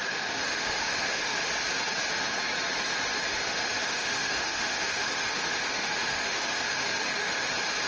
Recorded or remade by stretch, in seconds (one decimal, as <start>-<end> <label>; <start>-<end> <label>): 0.0-1.5 remade; 1.5-3.3 recorded; 3.3-7.5 remade; 7.5-7.9 recorded

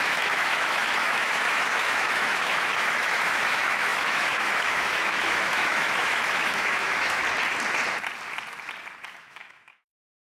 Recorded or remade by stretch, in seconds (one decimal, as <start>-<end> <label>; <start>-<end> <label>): 0.0-7.2 remade; 7.2-9.2 recorded; 9.2-10.3 remade

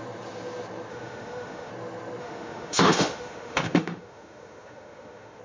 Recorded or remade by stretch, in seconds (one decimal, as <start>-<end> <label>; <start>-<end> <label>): 0.0-0.9 recorded; 0.9-1.7 remade; 1.7-2.2 recorded; 2.2-5.4 remade

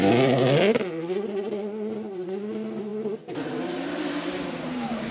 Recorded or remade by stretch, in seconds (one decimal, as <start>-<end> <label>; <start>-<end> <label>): 0.0-5.1 recorded

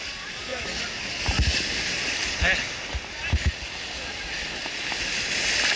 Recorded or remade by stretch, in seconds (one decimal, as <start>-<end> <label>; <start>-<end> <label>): 0.0-5.8 recorded

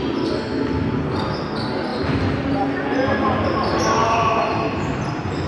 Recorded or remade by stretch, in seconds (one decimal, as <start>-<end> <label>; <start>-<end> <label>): 0.0-5.5 recorded

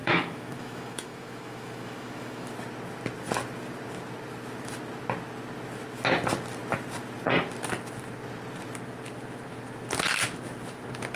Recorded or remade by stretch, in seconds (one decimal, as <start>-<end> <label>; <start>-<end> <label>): 0.0-2.5 remade; 2.5-11.2 recorded